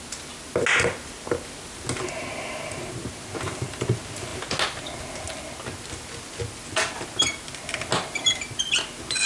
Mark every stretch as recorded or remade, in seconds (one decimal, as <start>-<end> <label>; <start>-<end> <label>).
0.0-9.3 recorded